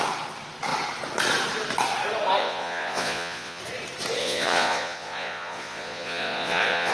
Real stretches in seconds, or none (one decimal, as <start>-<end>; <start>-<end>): 0.0-2.4; 3.6-4.2